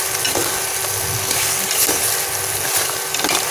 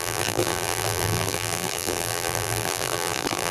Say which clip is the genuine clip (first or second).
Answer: first